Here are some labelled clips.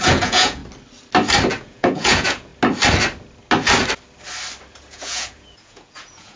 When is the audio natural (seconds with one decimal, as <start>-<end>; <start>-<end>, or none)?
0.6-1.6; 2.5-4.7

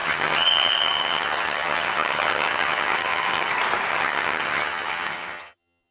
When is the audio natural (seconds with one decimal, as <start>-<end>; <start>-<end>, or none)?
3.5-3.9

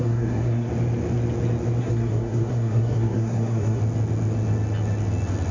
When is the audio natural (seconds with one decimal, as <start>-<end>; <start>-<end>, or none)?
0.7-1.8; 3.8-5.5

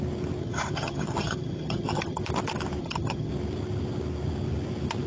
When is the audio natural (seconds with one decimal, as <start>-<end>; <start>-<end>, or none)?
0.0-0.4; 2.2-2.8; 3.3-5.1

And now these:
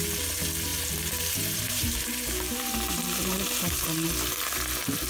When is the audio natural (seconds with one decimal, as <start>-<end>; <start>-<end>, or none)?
0.0-0.7; 3.8-5.1